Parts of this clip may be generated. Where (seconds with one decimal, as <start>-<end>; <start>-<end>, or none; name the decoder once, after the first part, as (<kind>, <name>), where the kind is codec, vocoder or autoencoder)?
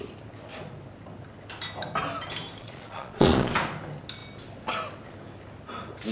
2.6-3.5 (vocoder, Vocos)